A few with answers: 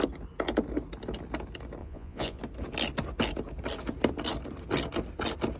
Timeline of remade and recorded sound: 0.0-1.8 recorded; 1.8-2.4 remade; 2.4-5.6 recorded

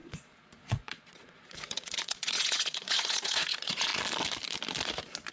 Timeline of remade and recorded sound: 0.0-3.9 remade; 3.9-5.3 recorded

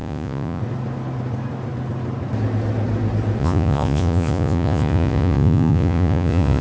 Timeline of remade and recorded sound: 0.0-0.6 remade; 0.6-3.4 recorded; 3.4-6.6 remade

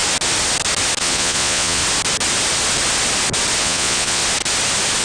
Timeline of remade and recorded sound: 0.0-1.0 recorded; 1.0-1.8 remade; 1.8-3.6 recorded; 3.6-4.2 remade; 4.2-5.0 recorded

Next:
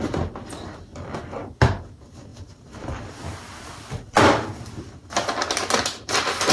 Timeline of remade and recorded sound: 0.0-6.5 recorded

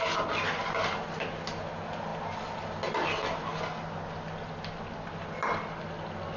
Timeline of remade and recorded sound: 0.0-6.4 recorded